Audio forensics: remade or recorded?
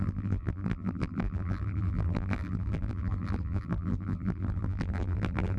remade